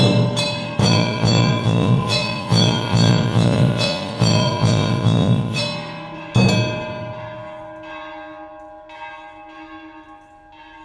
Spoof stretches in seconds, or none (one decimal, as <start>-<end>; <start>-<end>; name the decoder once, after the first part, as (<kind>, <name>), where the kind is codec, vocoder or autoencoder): 0.8-5.6 (vocoder, Vocos)